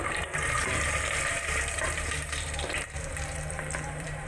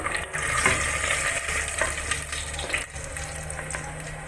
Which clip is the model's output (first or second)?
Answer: first